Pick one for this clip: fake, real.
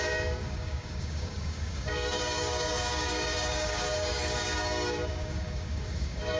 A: fake